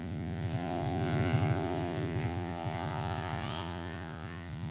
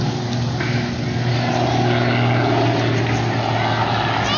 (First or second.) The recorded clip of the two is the second